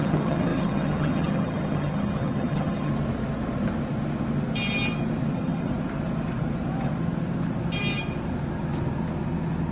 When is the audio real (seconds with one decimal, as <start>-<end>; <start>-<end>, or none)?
2.9-5.3; 5.7-9.7

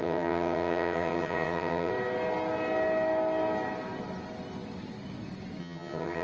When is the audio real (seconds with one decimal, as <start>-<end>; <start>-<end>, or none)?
1.9-5.6

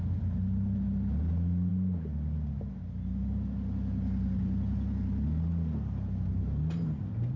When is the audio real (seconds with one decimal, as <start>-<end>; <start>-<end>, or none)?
0.0-7.4

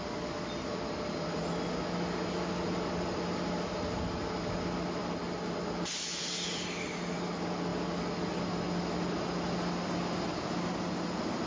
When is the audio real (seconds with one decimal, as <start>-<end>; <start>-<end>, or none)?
0.0-11.5

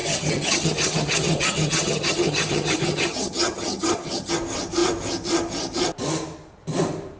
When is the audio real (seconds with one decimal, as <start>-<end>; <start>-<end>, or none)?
4.3-7.2

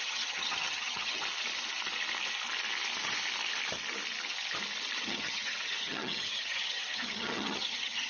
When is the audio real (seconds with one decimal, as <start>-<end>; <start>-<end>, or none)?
1.2-5.0